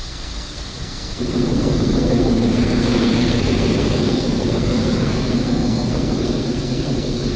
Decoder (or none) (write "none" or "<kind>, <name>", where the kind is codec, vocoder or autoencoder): codec, SNAC